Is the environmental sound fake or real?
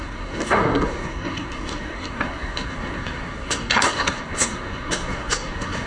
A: fake